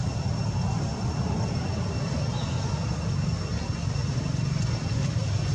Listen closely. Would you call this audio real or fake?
real